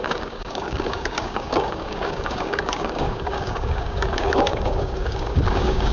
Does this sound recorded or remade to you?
remade